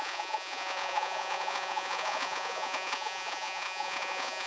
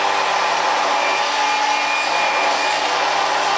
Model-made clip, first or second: first